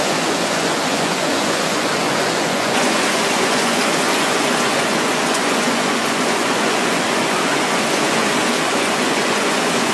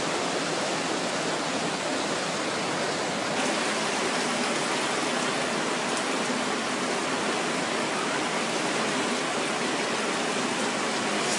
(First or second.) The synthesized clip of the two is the first